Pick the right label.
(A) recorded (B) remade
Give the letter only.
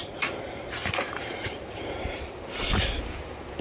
B